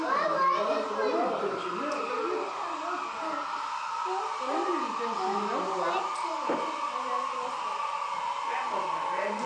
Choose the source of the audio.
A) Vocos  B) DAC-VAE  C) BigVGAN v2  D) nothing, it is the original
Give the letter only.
D